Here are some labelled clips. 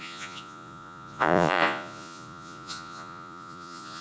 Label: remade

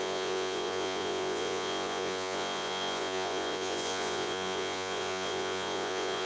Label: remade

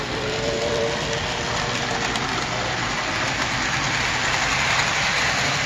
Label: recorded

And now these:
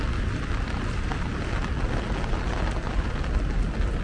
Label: recorded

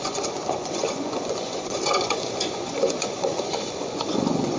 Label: remade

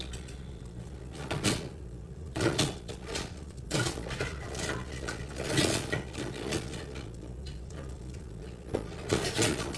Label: remade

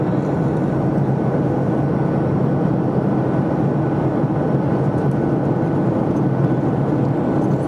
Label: recorded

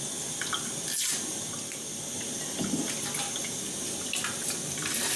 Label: recorded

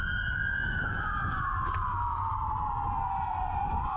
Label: remade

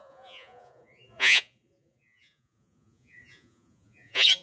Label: remade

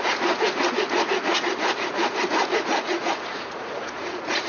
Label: remade